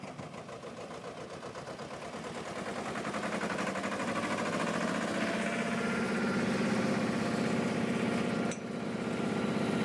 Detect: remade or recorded recorded